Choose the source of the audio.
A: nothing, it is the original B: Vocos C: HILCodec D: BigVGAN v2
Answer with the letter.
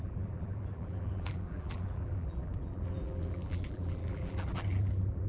D